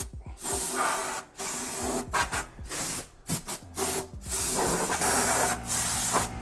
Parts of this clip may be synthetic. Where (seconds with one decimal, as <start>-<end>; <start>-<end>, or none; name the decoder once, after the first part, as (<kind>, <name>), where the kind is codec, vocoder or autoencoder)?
none

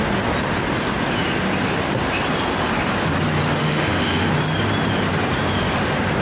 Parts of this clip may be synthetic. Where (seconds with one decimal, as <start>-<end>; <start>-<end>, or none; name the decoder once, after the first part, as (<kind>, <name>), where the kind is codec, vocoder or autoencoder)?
3.6-4.3 (autoencoder, DAC-VAE)